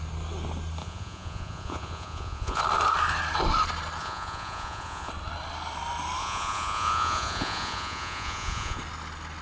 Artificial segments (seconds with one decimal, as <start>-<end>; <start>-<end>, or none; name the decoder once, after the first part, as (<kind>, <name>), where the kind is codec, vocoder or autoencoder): 0.8-2.6 (vocoder, Vocos); 4.0-5.1; 6.2-8.8